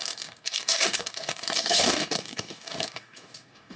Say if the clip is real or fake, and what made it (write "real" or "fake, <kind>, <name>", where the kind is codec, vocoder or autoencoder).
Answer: fake, codec, DAC